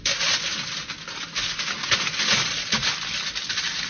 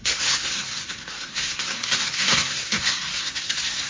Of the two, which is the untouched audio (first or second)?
first